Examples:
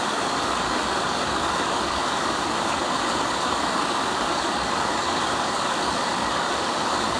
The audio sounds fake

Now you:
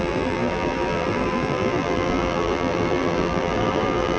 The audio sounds fake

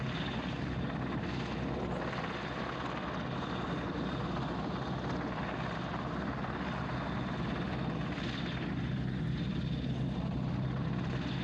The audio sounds real